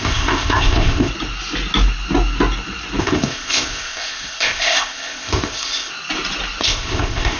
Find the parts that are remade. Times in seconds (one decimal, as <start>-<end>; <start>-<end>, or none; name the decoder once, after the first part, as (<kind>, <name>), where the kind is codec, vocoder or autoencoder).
0.0-1.1 (codec, ZipCodec); 3.0-5.9; 6.6-7.4